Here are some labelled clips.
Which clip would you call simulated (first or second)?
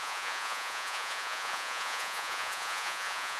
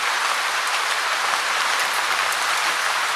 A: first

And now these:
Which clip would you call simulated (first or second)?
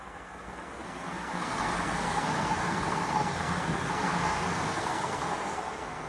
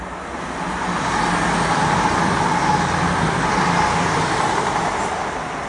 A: first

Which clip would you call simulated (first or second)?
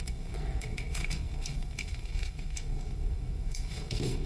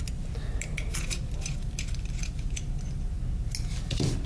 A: first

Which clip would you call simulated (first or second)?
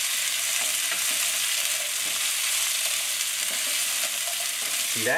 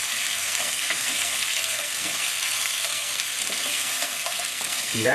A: second